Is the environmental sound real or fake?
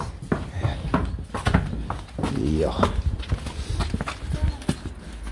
real